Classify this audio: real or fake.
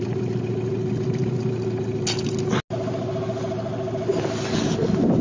real